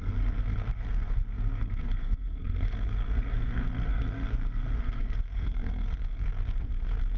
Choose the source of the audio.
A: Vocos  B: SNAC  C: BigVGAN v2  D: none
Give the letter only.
B